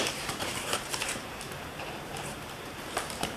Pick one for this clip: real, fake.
fake